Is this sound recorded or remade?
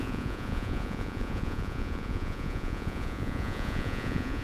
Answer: remade